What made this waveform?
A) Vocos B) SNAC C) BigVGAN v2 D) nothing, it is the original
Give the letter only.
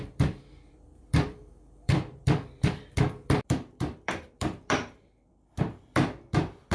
C